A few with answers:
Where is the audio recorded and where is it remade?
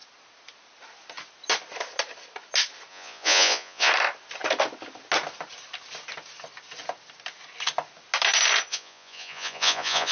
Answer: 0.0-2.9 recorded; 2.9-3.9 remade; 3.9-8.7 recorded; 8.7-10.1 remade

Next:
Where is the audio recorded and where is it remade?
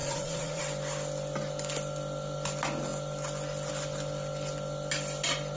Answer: 0.0-0.6 remade; 0.6-5.6 recorded